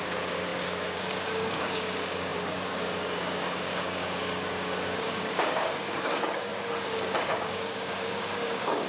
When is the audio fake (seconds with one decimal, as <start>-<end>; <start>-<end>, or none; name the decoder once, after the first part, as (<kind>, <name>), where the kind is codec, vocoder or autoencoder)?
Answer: 0.0-6.5 (codec, DAC); 7.2-8.9